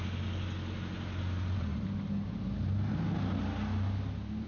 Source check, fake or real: real